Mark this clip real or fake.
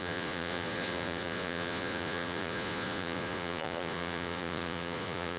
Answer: fake